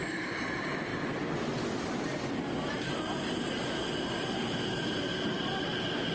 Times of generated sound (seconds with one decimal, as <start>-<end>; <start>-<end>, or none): none